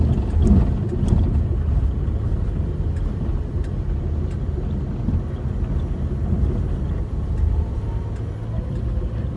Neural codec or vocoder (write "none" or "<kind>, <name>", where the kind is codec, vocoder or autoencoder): none